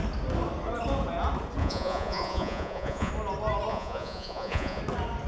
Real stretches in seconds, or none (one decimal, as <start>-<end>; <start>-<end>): 0.0-1.6; 3.1-3.7; 4.8-5.3